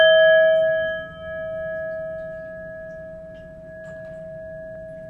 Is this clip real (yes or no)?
yes